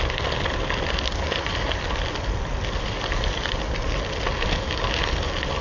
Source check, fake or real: real